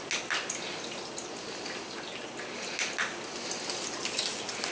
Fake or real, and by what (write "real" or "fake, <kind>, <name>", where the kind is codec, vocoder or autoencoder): real